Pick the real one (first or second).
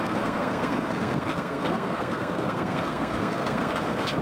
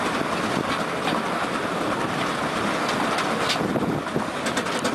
second